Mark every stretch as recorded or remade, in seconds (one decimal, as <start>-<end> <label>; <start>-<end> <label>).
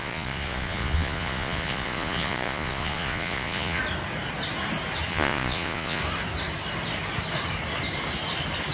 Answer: 0.0-3.8 remade; 3.8-5.1 recorded; 5.1-6.0 remade; 6.0-8.7 recorded